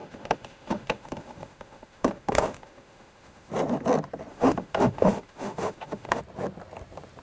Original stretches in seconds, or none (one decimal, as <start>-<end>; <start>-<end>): 3.5-4.3; 6.2-7.2